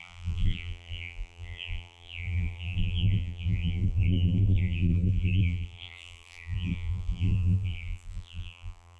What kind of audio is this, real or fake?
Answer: fake